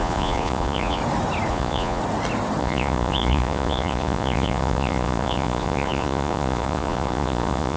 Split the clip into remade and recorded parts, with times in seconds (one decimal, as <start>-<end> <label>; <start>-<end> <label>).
0.0-1.0 remade; 1.0-1.5 recorded; 1.5-2.0 remade; 2.0-2.6 recorded; 2.6-7.8 remade